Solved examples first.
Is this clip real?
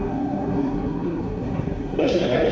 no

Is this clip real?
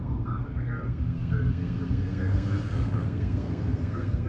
no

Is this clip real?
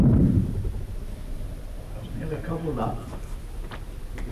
yes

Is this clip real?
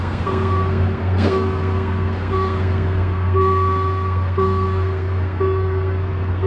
no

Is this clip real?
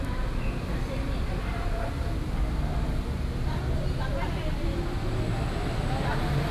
yes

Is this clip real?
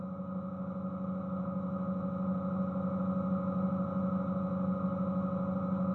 yes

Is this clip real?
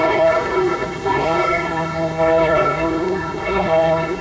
no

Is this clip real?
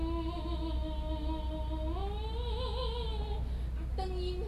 yes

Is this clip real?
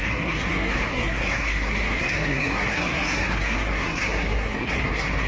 no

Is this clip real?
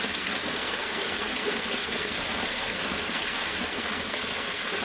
no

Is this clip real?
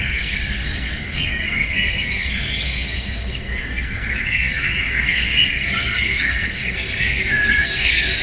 no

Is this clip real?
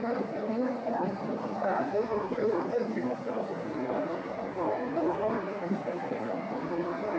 no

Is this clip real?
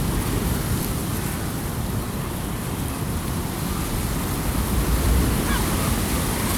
yes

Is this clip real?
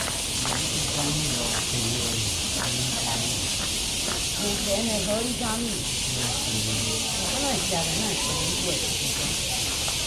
yes